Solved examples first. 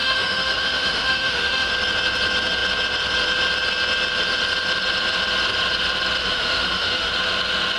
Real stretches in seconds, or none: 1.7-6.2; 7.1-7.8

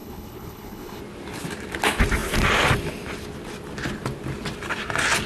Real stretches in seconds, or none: 1.0-5.3

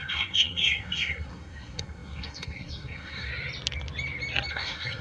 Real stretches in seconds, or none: 3.3-4.5